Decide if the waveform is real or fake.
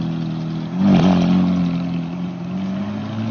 real